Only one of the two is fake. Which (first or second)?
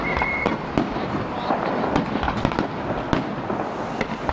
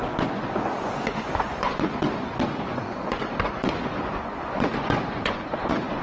second